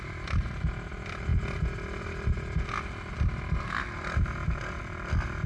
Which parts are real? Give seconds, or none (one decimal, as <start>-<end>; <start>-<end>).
0.0-5.5